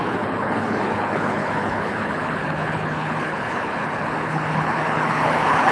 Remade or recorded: remade